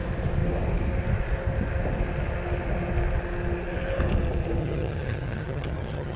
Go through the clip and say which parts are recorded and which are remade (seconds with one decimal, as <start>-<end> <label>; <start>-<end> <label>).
0.0-4.6 recorded; 4.6-6.2 remade